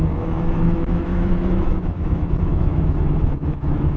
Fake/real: fake